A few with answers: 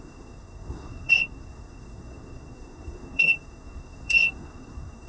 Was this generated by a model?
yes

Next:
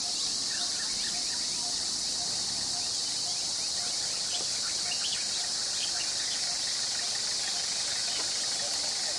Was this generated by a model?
no